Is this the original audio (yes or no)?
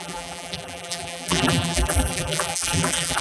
no